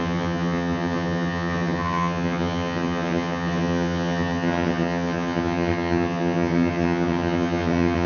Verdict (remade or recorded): remade